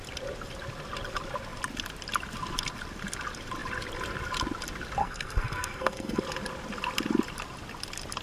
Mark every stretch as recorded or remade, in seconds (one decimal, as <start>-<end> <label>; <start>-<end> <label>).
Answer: 0.0-5.0 recorded; 5.0-6.2 remade; 6.2-8.2 recorded